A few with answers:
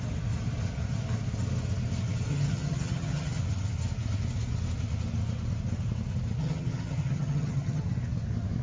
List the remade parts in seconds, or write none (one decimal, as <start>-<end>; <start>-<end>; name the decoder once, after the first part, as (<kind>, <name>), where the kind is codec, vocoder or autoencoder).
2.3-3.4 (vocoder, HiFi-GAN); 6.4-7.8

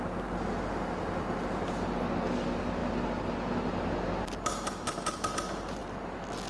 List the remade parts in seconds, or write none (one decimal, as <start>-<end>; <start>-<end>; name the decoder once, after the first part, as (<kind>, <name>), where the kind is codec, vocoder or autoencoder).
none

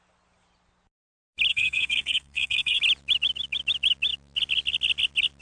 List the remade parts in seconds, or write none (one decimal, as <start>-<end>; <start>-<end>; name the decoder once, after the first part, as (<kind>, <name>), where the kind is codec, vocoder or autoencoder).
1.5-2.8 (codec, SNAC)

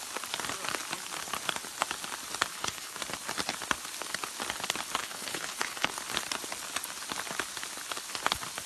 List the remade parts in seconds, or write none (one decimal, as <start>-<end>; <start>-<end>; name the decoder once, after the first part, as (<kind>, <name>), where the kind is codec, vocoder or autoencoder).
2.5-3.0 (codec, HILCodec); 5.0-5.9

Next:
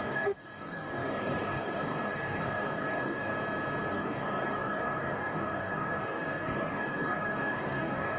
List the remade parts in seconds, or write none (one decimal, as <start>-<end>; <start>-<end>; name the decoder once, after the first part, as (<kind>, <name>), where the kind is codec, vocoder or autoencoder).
0.0-3.3 (codec, DAC); 3.9-8.2

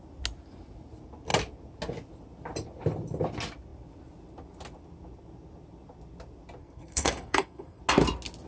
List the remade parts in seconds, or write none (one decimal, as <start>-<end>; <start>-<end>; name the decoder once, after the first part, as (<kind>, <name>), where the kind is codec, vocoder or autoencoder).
6.6-7.8 (codec, SNAC)

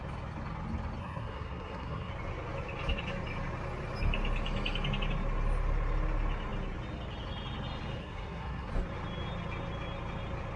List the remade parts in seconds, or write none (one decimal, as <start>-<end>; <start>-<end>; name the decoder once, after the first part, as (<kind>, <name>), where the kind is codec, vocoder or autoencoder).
1.0-2.1 (codec, SNAC); 8.0-8.7

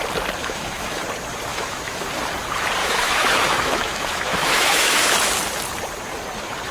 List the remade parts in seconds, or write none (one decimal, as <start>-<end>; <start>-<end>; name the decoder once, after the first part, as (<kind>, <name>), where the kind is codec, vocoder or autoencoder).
0.4-1.0 (autoencoder, DAC-VAE); 1.5-2.0; 2.8-5.1